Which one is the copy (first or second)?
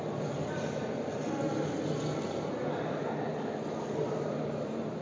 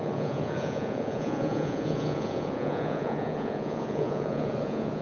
second